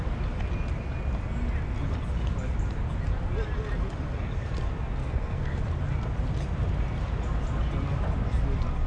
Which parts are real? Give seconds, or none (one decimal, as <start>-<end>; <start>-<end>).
0.0-5.0; 5.6-8.9